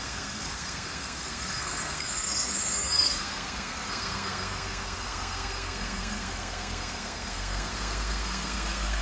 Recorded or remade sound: remade